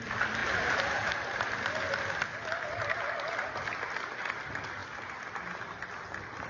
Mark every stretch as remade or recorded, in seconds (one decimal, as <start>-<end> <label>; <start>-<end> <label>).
0.0-0.4 recorded; 0.4-1.6 remade; 1.6-2.3 recorded; 2.3-3.1 remade; 3.1-6.5 recorded